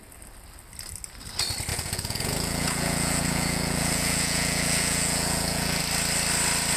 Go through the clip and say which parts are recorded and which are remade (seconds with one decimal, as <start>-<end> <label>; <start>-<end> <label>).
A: 0.0-1.7 recorded; 1.7-5.8 remade; 5.8-6.8 recorded